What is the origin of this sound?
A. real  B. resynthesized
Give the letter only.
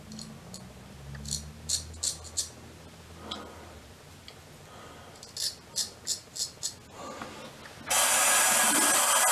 A